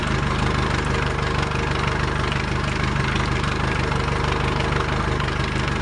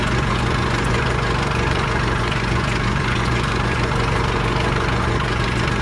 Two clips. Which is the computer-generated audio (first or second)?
second